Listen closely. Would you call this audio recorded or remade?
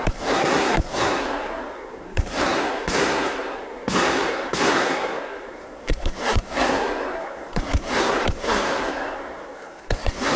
remade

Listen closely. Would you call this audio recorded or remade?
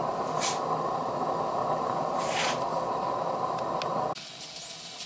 recorded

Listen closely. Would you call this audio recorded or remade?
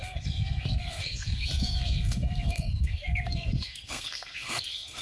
remade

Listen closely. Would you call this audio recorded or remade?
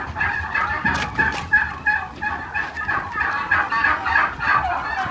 recorded